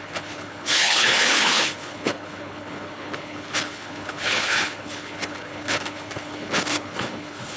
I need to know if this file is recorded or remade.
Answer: remade